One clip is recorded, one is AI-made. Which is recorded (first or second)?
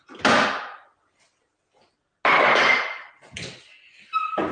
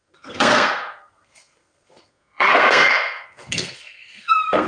first